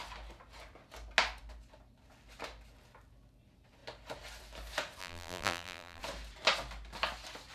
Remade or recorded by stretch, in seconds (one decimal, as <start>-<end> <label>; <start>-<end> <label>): 0.0-5.0 recorded; 5.0-6.0 remade; 6.0-7.5 recorded